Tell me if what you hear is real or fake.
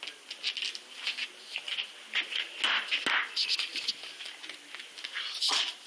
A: real